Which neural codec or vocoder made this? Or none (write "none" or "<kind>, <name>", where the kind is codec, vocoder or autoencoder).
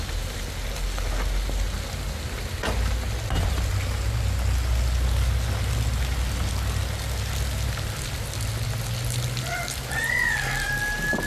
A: none